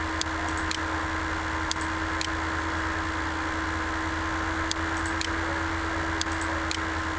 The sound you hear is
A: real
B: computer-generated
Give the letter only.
A